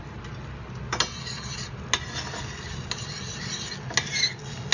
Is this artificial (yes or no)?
no